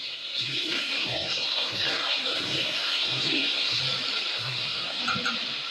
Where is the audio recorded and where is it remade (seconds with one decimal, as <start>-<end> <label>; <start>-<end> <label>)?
0.0-3.8 remade; 3.8-4.3 recorded; 4.3-5.0 remade; 5.0-5.7 recorded